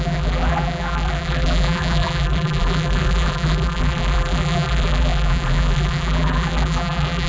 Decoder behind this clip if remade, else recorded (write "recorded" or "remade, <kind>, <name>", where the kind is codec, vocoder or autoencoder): remade, vocoder, BigVGAN v2